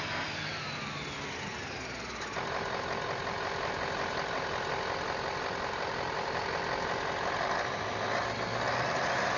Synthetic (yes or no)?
no